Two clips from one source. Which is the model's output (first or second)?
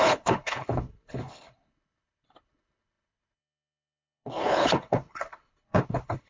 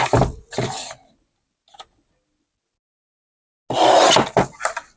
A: first